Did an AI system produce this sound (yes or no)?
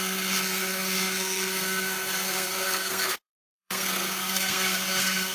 yes